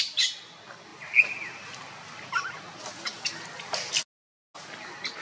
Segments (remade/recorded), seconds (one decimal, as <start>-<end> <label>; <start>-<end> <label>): 0.0-5.2 recorded